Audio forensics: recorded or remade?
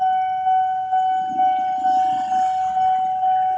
recorded